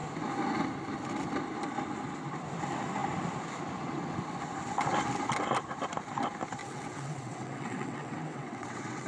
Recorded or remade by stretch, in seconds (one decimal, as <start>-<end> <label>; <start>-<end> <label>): 0.0-6.6 recorded; 6.6-9.1 remade